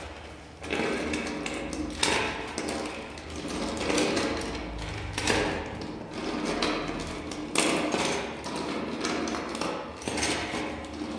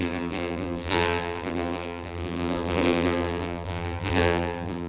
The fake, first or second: second